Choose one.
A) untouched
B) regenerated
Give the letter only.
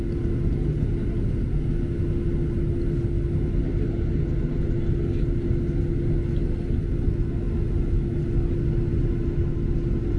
A